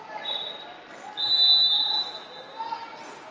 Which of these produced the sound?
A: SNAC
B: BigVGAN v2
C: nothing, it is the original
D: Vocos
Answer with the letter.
C